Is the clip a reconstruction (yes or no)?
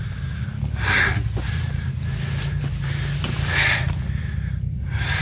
no